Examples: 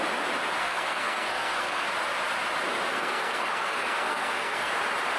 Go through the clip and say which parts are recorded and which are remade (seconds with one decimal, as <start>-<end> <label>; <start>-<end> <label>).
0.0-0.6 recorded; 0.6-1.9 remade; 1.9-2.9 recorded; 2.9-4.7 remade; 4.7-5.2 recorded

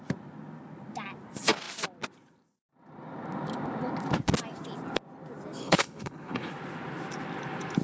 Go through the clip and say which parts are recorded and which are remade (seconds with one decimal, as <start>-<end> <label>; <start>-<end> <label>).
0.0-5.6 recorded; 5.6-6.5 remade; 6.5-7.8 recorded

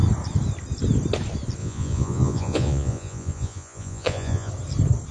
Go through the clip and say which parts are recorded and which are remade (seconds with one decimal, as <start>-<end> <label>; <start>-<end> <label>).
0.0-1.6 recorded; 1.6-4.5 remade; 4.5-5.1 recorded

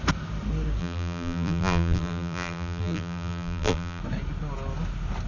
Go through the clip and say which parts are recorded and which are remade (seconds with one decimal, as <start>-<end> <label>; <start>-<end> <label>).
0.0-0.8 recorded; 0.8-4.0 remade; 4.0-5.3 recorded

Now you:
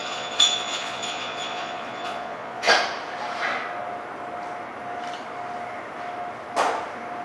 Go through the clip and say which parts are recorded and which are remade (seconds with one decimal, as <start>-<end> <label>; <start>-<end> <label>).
0.0-2.7 remade; 2.7-7.2 recorded

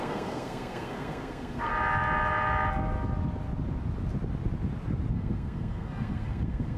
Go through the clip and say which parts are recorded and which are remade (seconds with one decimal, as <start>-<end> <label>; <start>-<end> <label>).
0.0-1.7 remade; 1.7-5.1 recorded; 5.1-6.8 remade

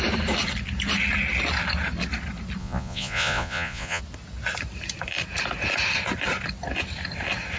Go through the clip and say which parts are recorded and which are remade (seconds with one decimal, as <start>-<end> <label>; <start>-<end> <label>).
0.0-2.6 recorded; 2.6-4.0 remade; 4.0-7.6 recorded

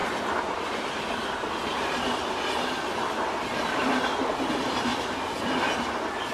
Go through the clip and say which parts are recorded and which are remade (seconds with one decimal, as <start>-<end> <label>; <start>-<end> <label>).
0.0-2.4 remade; 2.4-6.3 recorded